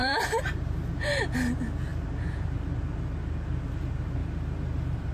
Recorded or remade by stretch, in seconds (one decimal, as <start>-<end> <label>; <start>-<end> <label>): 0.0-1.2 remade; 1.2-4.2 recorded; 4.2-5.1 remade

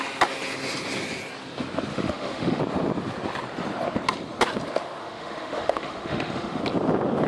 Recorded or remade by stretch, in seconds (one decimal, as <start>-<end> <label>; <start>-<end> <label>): 0.0-1.9 recorded; 1.9-2.6 remade; 2.6-5.0 recorded; 5.0-6.6 remade; 6.6-7.3 recorded

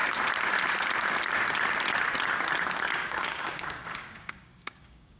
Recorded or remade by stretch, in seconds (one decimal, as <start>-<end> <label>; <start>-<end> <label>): 0.0-3.0 recorded; 3.0-5.2 remade